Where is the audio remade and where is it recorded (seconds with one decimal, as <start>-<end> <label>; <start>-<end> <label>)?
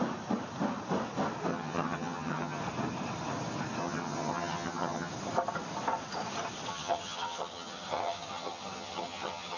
0.0-1.5 recorded; 1.5-2.6 remade; 2.6-3.8 recorded; 3.8-5.1 remade; 5.1-6.7 recorded; 6.7-9.6 remade